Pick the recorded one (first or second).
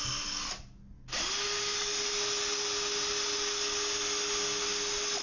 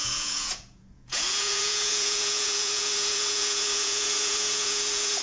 first